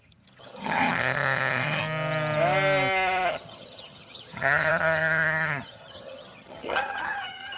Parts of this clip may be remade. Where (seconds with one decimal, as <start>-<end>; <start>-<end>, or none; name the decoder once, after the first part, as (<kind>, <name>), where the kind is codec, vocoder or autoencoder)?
0.0-1.8 (vocoder, HiFi-GAN); 3.3-7.6